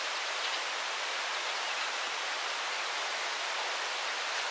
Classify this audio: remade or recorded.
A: recorded